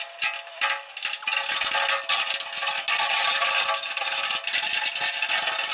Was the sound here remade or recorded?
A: recorded